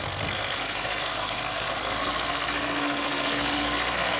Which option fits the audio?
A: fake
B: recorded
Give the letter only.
A